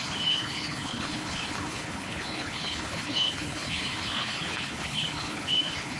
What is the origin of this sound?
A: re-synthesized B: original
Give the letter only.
A